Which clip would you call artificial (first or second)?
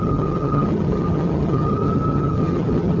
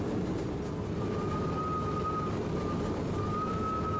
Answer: first